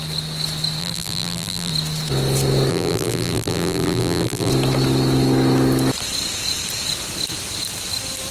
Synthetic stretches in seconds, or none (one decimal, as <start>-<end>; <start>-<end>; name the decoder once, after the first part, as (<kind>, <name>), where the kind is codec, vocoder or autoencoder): 0.8-1.7 (vocoder, BigVGAN v2); 2.7-4.5